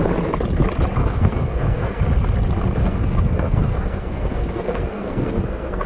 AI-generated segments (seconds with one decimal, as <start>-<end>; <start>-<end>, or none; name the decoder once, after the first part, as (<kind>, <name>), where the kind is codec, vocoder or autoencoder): 1.0-2.0 (codec, SNAC); 2.8-5.9